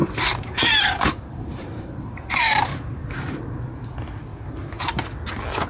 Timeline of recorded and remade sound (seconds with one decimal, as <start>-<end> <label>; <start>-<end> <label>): 0.0-3.4 remade; 3.4-4.3 recorded; 4.3-4.9 remade; 4.9-5.7 recorded